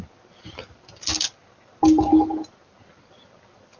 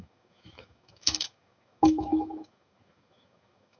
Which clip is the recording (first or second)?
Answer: first